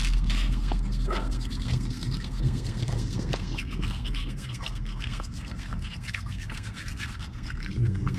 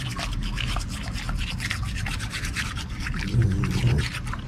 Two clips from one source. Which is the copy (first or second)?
first